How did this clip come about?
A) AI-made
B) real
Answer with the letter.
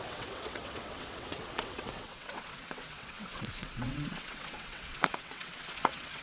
A